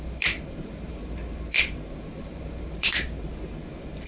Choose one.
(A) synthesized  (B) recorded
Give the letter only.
A